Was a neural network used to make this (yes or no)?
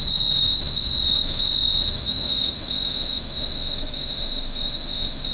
yes